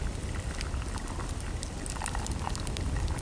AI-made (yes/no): yes